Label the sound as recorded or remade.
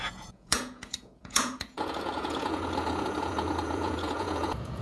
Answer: remade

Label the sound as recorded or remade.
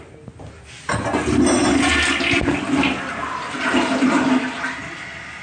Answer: recorded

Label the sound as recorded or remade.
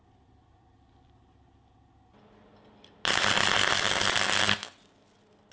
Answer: recorded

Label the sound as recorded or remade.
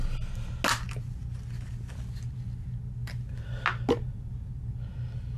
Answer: recorded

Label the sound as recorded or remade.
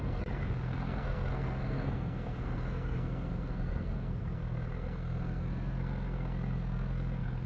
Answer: remade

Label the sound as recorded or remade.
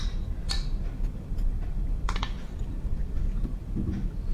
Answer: remade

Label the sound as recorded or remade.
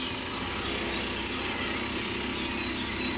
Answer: recorded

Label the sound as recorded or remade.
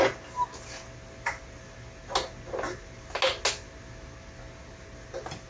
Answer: recorded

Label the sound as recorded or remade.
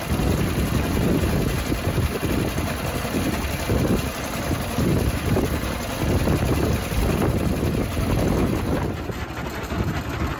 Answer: recorded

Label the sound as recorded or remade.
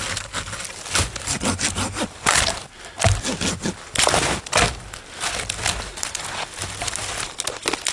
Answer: recorded